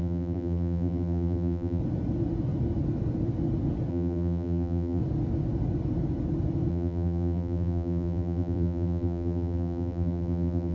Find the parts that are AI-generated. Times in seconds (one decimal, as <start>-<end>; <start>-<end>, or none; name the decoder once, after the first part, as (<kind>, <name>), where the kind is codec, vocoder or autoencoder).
0.0-1.8 (vocoder, BigVGAN v2); 3.9-5.0; 6.7-10.7